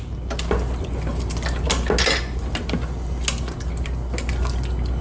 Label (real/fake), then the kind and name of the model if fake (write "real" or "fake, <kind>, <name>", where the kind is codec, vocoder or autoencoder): real